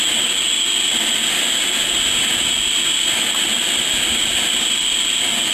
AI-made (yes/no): no